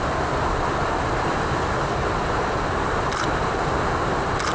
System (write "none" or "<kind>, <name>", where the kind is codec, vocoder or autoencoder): none